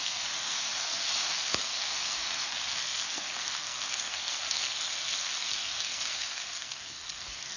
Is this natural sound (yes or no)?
no